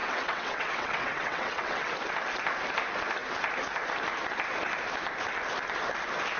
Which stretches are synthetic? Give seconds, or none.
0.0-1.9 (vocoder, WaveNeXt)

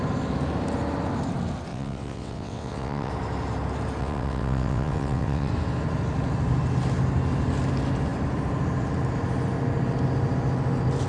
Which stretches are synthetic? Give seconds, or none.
1.7-3.1 (vocoder, WaveNeXt); 4.0-5.5

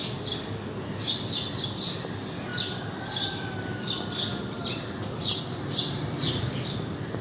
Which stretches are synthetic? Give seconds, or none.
none

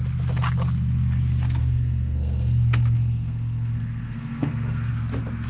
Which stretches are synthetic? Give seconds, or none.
1.6-4.9 (codec, SNAC)

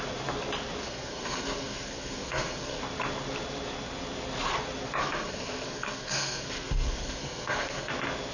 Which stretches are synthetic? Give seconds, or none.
0.8-2.8 (codec, SNAC); 5.0-7.9

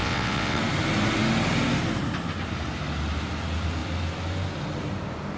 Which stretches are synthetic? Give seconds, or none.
0.0-0.6 (vocoder, WaveNeXt)

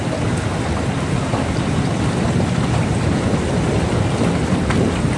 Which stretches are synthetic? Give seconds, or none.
0.5-3.6 (vocoder, BigVGAN v2)